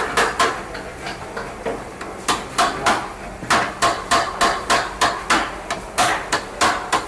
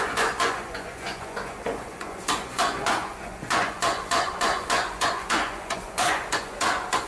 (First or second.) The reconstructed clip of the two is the second